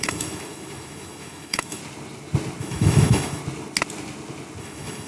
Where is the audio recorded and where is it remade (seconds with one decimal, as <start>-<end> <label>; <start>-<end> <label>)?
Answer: 0.0-1.8 remade; 1.8-2.6 recorded; 2.6-3.4 remade; 3.4-4.6 recorded; 4.6-5.1 remade